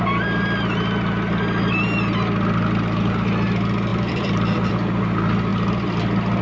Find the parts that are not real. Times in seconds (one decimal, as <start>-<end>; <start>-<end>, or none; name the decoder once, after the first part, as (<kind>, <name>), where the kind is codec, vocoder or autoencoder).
3.9-4.7 (vocoder, BigVGAN v2)